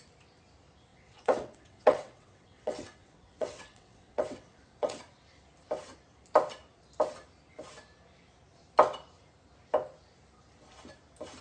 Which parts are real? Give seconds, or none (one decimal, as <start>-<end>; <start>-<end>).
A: 0.0-0.9; 5.0-11.4